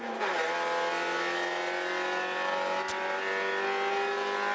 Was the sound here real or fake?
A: real